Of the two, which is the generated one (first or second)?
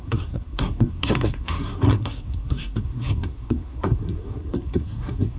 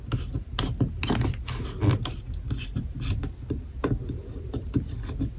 first